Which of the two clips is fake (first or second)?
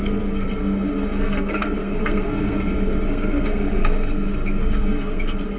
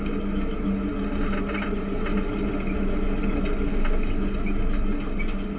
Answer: first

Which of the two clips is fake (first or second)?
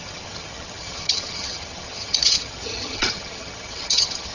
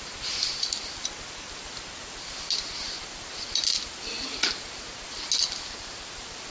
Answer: first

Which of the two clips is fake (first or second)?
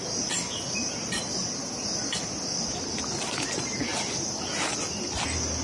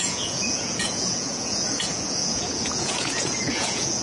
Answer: second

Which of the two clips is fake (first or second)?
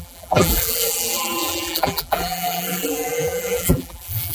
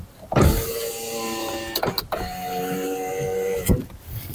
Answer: first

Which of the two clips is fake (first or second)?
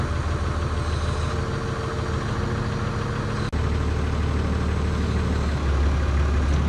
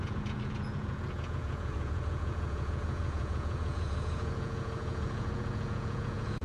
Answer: second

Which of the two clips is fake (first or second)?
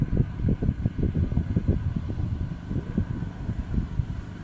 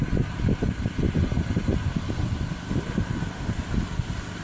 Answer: second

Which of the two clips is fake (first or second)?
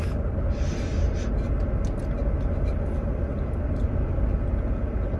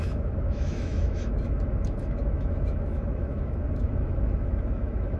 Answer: second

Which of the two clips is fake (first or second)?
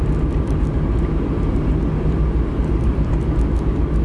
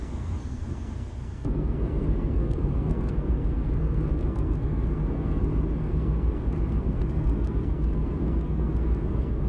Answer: second